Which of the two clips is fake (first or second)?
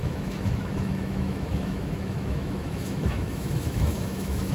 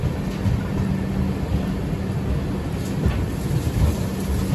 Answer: first